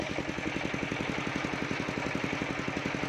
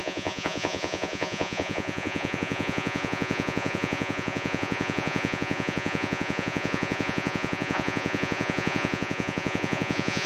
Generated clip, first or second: second